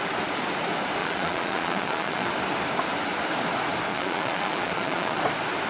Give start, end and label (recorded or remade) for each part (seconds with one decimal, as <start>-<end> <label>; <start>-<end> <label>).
0.0-1.0 recorded; 1.0-2.3 remade; 2.3-3.9 recorded; 3.9-5.2 remade; 5.2-5.7 recorded